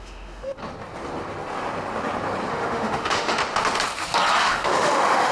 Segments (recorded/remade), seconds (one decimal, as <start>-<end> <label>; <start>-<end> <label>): 0.0-0.6 remade; 0.6-2.5 recorded; 2.5-3.4 remade; 3.4-4.4 recorded; 4.4-5.3 remade